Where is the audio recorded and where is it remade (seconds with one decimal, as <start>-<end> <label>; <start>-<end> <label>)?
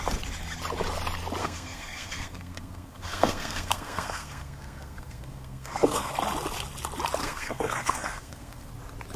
0.0-1.4 recorded; 1.4-6.1 remade; 6.1-7.2 recorded; 7.2-8.7 remade; 8.7-9.2 recorded